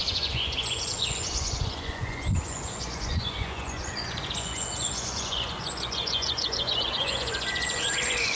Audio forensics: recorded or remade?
remade